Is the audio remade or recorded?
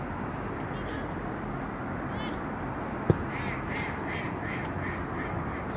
recorded